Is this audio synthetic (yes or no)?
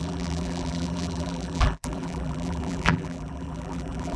yes